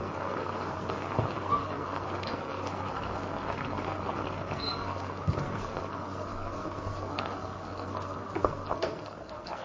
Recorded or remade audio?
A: remade